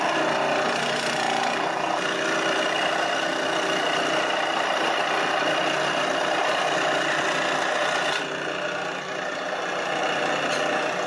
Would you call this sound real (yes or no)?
yes